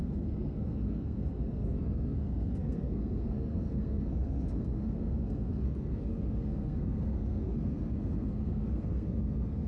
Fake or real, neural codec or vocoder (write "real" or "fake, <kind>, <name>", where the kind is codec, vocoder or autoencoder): fake, codec, SNAC